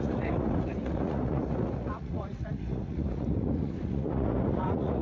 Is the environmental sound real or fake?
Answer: fake